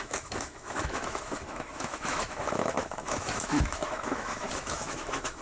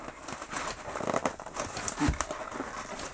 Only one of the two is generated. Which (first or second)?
first